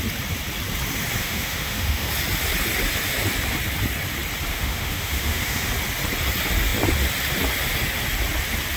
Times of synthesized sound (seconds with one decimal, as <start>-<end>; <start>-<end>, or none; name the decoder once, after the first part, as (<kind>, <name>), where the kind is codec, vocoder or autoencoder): 1.2-2.1 (autoencoder, DAC-VAE); 4.5-5.7